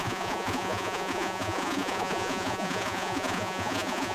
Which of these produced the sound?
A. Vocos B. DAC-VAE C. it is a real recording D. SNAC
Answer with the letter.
A